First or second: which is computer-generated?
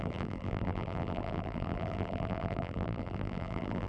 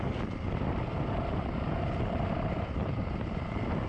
first